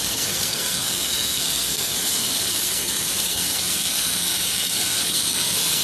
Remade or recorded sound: remade